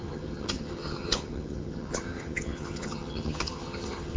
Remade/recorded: remade